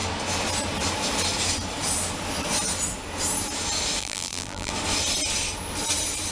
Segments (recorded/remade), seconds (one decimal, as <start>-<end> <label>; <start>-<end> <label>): 0.0-4.0 recorded; 4.0-4.7 remade; 4.7-6.3 recorded